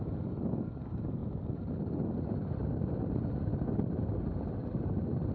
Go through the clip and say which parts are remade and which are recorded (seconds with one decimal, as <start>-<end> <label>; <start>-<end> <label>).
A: 0.0-5.3 recorded

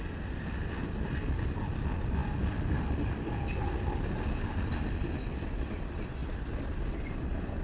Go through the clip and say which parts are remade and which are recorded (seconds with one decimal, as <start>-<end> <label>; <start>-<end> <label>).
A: 0.0-7.6 recorded